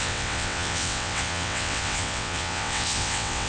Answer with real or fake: fake